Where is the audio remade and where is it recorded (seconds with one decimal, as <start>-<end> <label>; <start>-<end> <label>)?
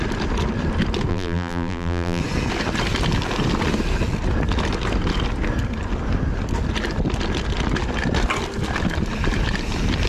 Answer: 0.0-1.1 recorded; 1.1-2.2 remade; 2.2-10.1 recorded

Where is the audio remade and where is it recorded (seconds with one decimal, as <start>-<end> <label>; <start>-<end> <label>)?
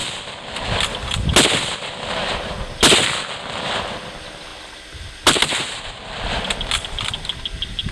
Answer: 0.0-7.9 recorded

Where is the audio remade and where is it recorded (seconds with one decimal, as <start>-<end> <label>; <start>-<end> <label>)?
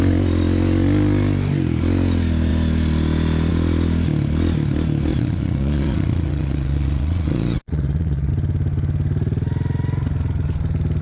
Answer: 0.0-5.1 recorded; 5.1-8.3 remade; 8.3-11.0 recorded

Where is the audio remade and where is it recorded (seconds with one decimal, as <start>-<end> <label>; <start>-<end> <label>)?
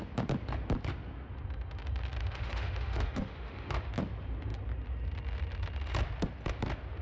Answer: 0.0-2.2 recorded; 2.2-3.9 remade; 3.9-7.0 recorded